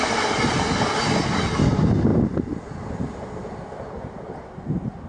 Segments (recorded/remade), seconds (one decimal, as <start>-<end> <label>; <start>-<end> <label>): 0.0-5.1 recorded